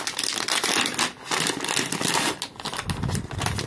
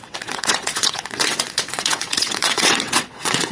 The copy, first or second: second